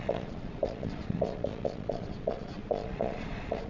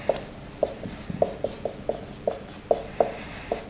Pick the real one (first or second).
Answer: second